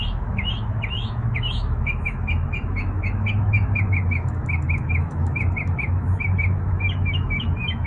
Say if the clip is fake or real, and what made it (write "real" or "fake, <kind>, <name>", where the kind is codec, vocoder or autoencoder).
fake, autoencoder, DAC-VAE